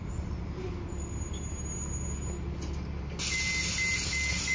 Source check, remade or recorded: recorded